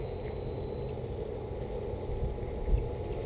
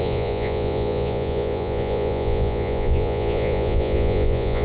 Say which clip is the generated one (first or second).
second